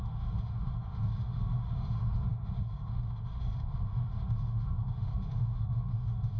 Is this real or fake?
fake